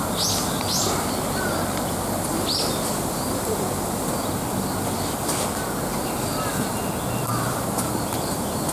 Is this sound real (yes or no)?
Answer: yes